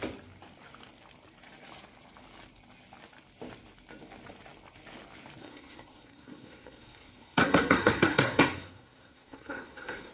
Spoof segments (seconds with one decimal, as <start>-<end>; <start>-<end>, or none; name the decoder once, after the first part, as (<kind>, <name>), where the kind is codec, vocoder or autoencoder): 5.4-10.1 (codec, SNAC)